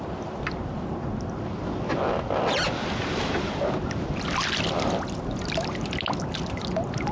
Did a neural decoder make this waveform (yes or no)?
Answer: no